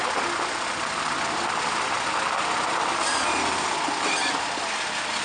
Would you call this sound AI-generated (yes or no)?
no